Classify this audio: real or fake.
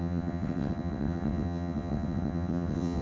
fake